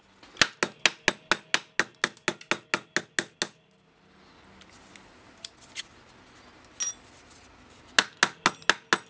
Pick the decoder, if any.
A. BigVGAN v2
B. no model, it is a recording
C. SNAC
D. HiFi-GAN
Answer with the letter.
B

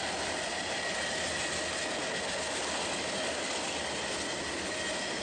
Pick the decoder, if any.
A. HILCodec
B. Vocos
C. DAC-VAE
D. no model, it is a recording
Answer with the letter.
D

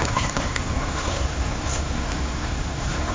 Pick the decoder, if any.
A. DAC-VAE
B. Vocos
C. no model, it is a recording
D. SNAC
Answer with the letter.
D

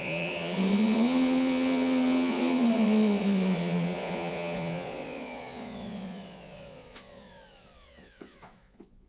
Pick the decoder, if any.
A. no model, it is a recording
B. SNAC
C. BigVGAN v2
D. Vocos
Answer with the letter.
D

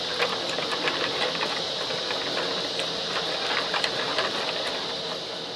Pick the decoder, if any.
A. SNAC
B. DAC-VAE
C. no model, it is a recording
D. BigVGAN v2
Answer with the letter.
C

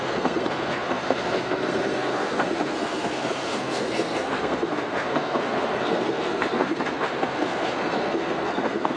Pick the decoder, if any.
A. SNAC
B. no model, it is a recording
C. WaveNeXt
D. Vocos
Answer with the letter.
A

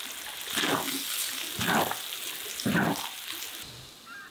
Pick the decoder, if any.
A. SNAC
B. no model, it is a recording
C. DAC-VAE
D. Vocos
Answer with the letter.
B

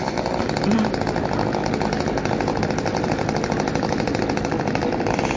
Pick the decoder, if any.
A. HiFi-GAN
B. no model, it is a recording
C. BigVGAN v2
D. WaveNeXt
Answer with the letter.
B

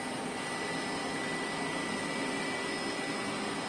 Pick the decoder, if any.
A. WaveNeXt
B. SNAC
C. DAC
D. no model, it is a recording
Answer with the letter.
D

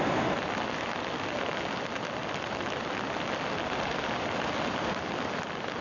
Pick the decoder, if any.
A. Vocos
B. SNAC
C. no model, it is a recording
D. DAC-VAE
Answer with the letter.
C